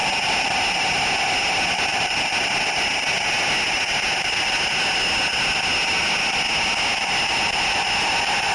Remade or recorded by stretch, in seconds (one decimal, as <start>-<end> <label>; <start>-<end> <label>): 0.0-8.5 recorded